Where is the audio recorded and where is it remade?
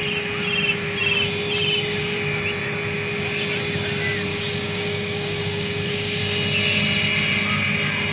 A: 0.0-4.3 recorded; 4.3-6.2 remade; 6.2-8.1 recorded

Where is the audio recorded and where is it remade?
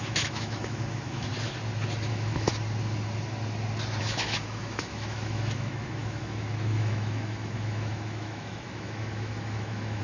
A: 0.0-1.3 remade; 1.3-2.1 recorded; 2.1-2.5 remade; 2.5-4.0 recorded; 4.0-10.0 remade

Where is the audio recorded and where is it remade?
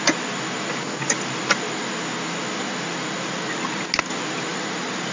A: 0.0-5.1 recorded